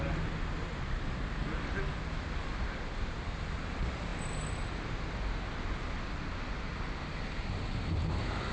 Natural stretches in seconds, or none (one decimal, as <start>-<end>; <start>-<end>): 0.0-8.5